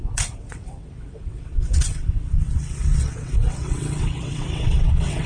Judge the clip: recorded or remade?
remade